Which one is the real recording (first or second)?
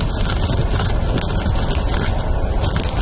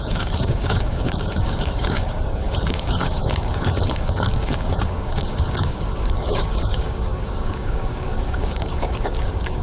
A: first